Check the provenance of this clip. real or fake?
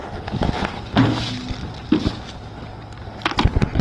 real